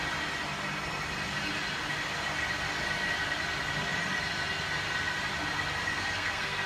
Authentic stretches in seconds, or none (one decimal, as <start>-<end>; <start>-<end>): 0.0-5.9